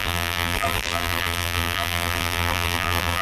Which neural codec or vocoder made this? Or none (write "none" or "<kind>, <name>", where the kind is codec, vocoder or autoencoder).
vocoder, BigVGAN v2